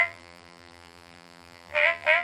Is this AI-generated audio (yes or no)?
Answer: yes